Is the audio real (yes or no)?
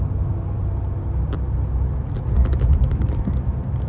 yes